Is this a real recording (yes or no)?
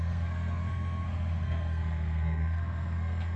no